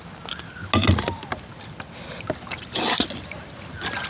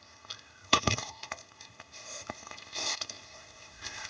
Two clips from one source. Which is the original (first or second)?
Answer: first